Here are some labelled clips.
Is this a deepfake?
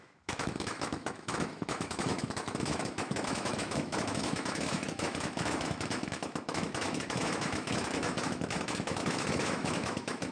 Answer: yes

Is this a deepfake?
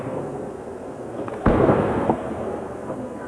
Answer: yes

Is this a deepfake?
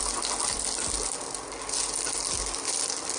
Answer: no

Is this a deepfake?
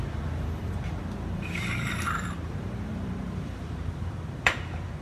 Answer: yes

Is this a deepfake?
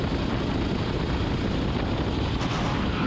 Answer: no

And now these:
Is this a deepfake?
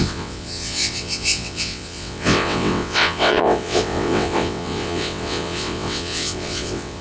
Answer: yes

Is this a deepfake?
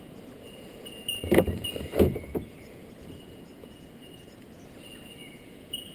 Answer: yes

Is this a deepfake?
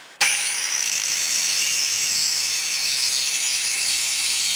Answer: yes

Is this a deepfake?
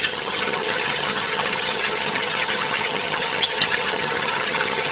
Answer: yes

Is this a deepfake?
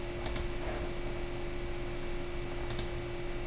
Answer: no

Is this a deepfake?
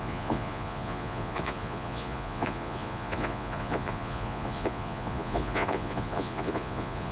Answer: yes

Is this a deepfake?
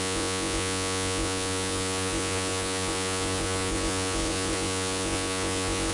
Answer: yes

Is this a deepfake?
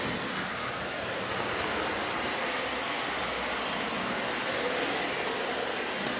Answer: no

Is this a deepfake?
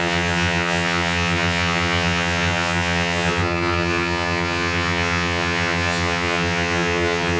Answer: yes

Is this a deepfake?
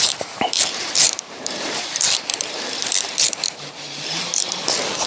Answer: yes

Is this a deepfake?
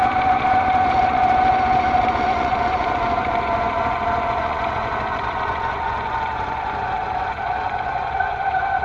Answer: yes